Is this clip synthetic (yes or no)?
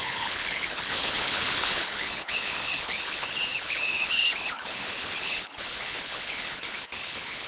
yes